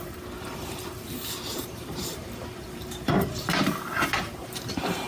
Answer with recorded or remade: remade